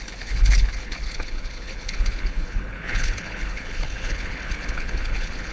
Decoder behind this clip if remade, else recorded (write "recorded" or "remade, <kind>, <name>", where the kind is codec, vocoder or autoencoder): remade, codec, HILCodec